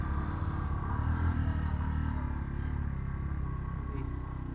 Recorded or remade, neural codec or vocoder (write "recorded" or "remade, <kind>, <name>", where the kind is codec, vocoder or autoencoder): recorded